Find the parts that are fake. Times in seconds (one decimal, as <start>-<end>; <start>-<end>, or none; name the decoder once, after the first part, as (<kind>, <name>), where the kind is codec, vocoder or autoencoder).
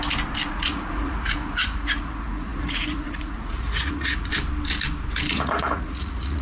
0.5-4.3 (vocoder, Vocos); 5.3-6.4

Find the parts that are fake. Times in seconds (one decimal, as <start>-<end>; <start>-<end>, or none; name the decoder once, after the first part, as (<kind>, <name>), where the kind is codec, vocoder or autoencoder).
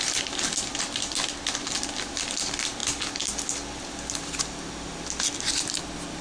none